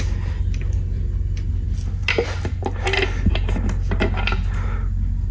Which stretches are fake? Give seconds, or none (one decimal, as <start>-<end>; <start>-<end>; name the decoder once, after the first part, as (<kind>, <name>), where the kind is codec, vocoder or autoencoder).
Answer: none